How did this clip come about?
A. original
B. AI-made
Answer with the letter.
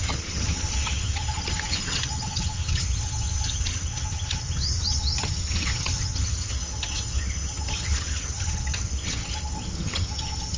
B